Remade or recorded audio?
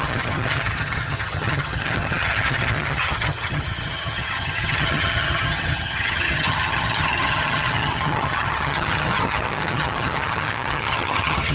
remade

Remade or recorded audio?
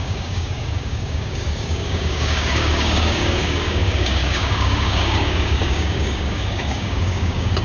remade